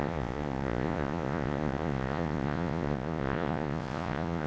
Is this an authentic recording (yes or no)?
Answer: no